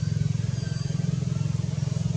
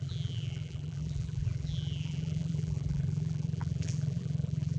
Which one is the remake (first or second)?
second